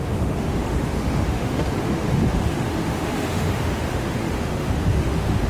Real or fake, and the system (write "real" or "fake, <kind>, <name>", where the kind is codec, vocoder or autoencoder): fake, autoencoder, DAC-VAE